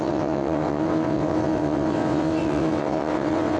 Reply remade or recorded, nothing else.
remade